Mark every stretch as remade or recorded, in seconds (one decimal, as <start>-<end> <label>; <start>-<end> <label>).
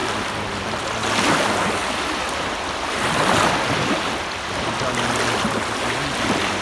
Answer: 0.0-0.5 remade; 0.5-6.6 recorded